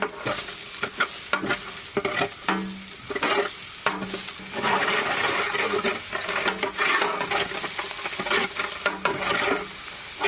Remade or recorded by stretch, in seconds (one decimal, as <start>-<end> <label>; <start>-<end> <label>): 0.0-0.6 recorded; 0.6-1.1 remade; 1.1-10.3 recorded

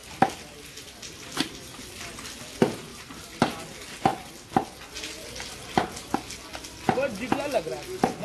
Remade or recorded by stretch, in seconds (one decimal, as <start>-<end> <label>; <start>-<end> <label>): 0.0-2.9 recorded; 2.9-3.4 remade; 3.4-8.2 recorded

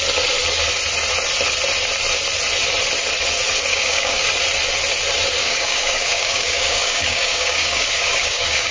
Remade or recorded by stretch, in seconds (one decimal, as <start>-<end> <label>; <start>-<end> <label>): 0.0-3.7 recorded; 3.7-4.3 remade; 4.3-5.4 recorded; 5.4-8.7 remade

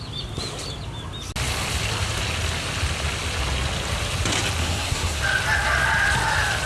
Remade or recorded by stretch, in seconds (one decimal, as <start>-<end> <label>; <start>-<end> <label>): 0.0-4.6 recorded; 4.6-5.2 remade; 5.2-6.7 recorded

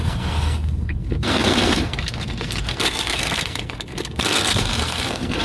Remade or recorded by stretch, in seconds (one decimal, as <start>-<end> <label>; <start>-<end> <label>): 0.0-5.4 remade

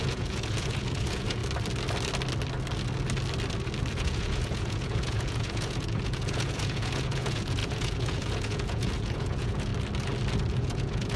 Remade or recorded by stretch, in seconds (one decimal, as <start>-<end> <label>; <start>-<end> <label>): 0.0-1.4 remade; 1.4-3.9 recorded; 3.9-9.7 remade; 9.7-10.5 recorded; 10.5-11.2 remade